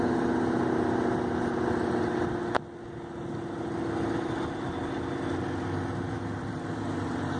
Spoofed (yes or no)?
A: no